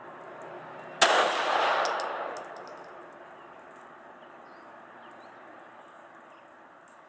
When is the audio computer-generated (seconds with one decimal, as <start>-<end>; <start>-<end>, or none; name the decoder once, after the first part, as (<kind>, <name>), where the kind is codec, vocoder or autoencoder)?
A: none